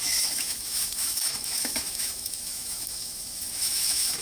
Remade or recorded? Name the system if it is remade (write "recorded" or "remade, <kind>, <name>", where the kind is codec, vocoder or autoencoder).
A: remade, autoencoder, DAC-VAE